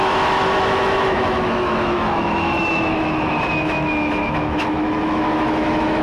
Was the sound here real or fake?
fake